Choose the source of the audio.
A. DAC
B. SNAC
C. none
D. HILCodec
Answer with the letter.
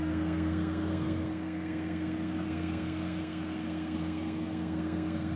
B